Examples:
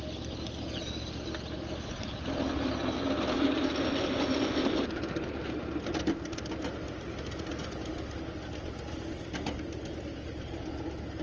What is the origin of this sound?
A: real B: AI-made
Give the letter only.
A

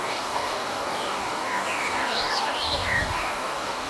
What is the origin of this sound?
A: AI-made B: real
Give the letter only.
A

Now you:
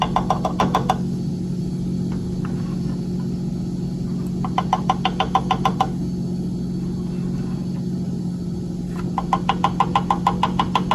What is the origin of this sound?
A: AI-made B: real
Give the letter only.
B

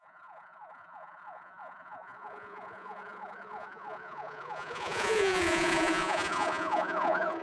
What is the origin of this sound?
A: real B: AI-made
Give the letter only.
B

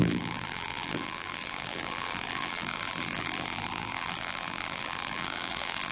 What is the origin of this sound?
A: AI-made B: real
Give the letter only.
A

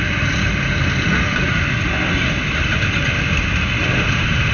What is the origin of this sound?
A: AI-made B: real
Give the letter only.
B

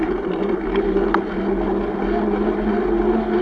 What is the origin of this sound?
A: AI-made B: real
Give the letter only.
B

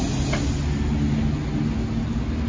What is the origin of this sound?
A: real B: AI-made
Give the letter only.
A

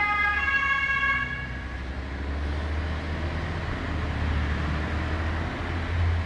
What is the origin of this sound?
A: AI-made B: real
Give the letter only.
B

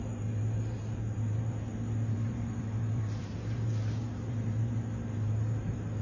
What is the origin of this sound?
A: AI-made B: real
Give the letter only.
A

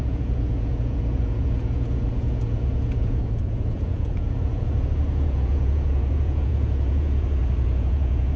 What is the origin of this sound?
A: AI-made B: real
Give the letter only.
A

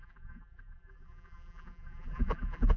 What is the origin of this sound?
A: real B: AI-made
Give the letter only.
B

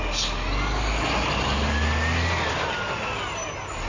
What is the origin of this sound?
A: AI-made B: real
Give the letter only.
B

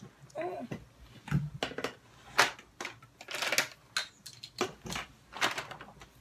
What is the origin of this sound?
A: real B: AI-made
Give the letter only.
A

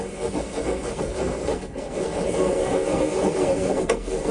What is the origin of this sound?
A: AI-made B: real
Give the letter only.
A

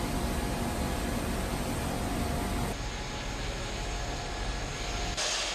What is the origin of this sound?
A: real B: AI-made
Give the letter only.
A